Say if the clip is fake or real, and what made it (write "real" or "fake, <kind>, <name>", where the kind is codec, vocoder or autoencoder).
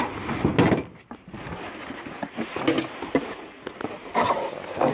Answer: real